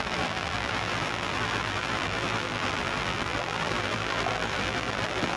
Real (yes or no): no